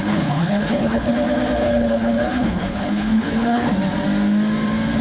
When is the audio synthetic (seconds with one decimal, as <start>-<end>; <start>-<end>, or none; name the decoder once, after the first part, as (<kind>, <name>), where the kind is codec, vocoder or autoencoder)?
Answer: 0.0-1.1 (codec, HILCodec); 1.6-3.7

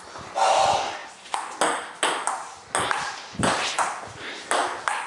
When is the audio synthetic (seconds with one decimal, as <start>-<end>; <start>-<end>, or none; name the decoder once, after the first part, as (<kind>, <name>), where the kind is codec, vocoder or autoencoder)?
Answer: none

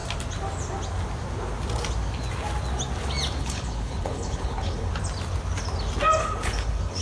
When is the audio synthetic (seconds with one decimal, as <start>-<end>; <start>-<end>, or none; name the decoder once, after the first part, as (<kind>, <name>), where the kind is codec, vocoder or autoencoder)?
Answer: 3.4-4.9 (codec, HILCodec); 6.2-7.0

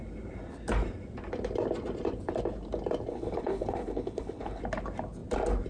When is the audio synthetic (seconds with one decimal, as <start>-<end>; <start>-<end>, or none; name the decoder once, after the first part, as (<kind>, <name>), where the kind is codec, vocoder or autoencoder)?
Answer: 3.1-4.6 (codec, HILCodec)